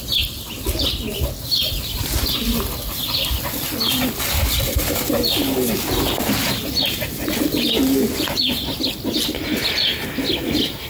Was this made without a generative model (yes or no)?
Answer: yes